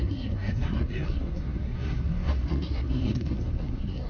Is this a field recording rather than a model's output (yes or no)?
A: no